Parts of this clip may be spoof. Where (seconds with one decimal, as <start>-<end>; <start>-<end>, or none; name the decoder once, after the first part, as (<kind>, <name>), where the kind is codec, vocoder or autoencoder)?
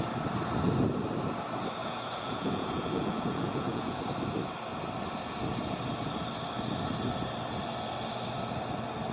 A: 1.8-4.0 (vocoder, Vocos)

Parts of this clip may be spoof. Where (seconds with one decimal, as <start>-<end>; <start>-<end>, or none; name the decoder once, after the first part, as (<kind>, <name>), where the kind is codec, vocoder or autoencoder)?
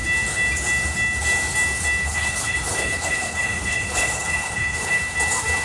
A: 2.0-5.0 (codec, HILCodec)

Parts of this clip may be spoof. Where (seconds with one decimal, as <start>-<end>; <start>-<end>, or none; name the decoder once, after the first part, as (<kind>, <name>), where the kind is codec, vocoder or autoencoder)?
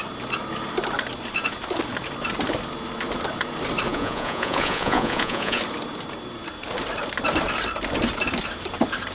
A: 3.9-5.6 (vocoder, Vocos)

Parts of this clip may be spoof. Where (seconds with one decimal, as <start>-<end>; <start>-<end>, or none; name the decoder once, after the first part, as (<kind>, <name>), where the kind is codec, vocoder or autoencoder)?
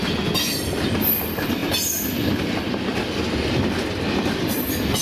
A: none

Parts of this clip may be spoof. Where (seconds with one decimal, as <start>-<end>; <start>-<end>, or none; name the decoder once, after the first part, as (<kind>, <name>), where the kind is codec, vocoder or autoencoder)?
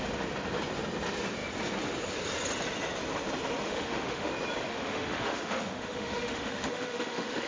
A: 3.6-4.3 (autoencoder, DAC-VAE); 4.7-7.5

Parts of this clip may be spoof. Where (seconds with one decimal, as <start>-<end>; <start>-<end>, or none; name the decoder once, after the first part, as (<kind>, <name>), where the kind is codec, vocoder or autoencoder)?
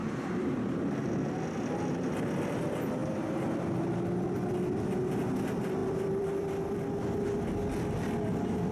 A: 0.0-1.1 (vocoder, BigVGAN v2); 3.0-3.6; 5.8-7.4